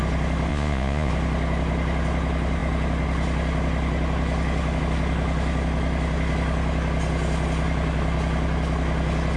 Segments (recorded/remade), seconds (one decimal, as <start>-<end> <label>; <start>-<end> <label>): 0.0-0.5 recorded; 0.5-1.1 remade; 1.1-9.4 recorded